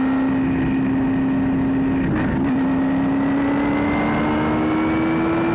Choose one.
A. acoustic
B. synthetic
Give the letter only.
A